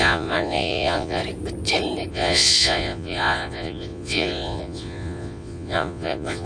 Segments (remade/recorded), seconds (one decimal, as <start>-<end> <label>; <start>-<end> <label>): 0.0-1.2 remade; 1.2-2.1 recorded; 2.1-6.5 remade